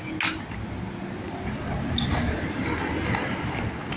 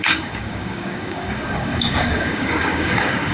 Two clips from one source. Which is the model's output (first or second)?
second